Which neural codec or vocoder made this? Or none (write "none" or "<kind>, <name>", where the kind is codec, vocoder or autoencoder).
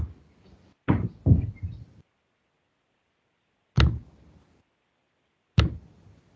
none